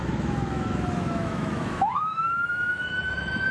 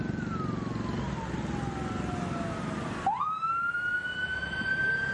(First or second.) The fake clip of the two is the first